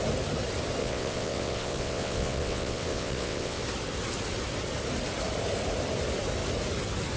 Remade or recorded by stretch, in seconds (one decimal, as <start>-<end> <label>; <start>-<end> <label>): 0.0-0.8 recorded; 0.8-3.6 remade; 3.6-7.2 recorded